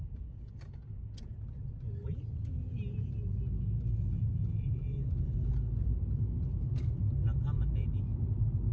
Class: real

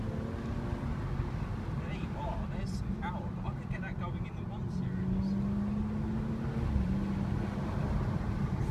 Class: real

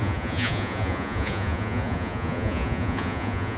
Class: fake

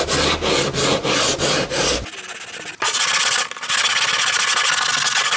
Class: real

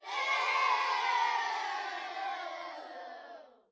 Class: fake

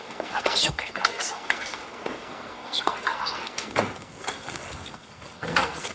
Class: fake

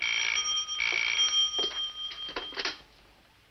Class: fake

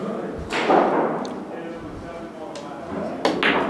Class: real